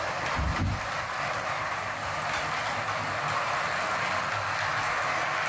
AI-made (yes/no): no